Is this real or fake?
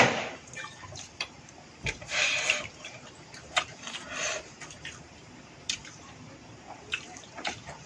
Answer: fake